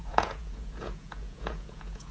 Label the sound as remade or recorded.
remade